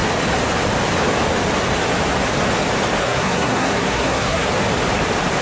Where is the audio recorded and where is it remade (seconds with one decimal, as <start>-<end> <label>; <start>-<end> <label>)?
0.0-3.0 recorded; 3.0-4.5 remade; 4.5-5.4 recorded